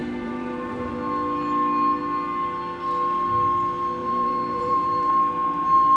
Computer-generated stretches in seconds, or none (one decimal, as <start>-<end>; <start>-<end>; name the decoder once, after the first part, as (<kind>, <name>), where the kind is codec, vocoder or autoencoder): 0.0-0.9 (vocoder, BigVGAN v2); 4.0-5.1